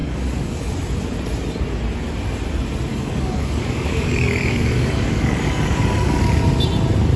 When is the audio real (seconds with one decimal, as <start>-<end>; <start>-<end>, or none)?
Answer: 0.7-2.9; 6.2-7.2